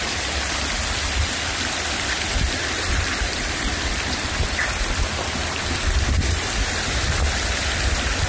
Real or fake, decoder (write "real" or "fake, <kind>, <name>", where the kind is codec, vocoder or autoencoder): fake, vocoder, BigVGAN v2